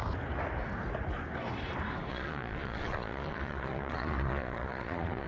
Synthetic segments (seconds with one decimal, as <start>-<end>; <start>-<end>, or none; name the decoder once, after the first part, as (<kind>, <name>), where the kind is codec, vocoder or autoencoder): 2.1-5.3 (vocoder, Vocos)